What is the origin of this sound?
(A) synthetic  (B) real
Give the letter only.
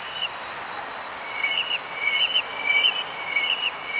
B